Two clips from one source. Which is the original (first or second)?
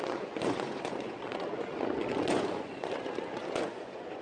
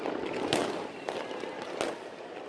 second